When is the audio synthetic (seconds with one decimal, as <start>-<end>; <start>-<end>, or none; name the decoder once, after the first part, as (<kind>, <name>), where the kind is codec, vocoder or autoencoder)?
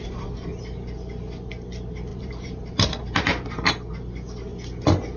2.1-2.9 (vocoder, BigVGAN v2)